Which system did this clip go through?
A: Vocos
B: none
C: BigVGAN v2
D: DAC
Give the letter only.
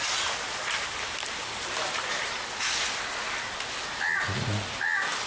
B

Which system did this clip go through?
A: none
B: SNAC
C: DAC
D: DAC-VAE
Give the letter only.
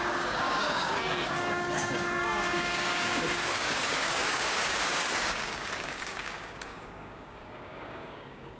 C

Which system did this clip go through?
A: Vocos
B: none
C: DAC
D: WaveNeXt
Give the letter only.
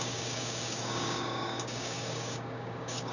C